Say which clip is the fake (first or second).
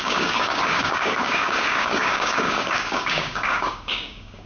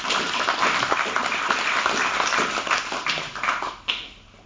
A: first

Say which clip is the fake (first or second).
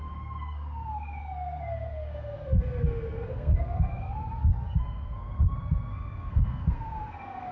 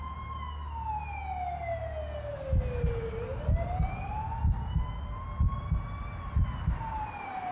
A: first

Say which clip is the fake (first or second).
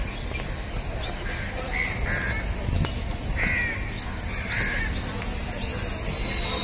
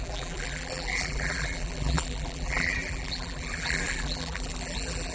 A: second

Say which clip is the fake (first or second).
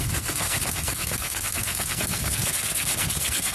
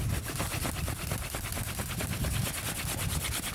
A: first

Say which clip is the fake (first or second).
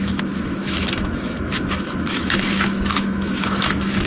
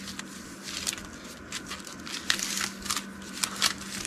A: first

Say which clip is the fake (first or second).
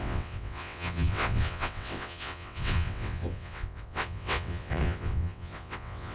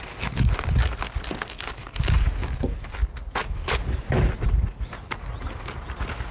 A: first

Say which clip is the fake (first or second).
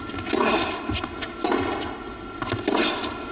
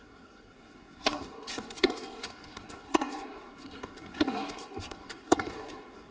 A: second